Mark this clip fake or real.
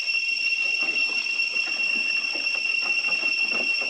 real